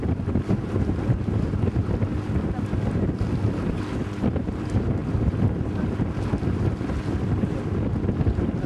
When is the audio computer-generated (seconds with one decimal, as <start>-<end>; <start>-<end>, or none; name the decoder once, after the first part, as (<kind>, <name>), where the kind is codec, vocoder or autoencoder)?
5.0-5.6 (vocoder, BigVGAN v2)